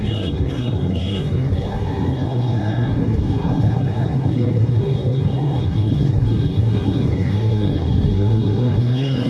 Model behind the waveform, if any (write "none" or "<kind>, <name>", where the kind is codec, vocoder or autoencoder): codec, SNAC